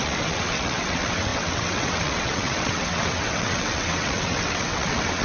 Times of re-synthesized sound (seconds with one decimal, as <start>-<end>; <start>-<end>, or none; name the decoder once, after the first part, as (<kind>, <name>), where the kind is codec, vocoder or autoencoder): 0.0-5.2 (vocoder, WaveNeXt)